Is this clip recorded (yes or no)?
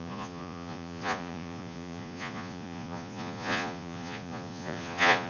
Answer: no